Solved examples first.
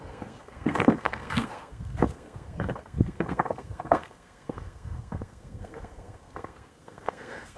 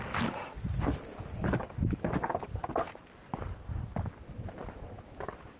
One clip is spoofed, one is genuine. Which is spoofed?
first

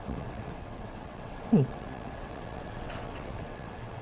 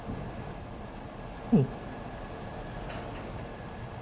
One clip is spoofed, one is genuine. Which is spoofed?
first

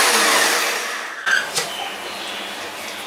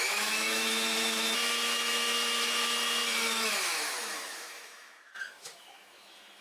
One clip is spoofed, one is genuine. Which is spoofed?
second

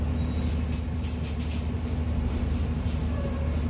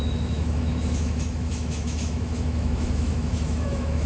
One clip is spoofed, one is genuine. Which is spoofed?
second